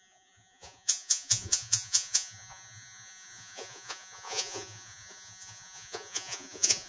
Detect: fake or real fake